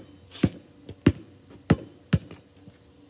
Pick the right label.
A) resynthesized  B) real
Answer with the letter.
B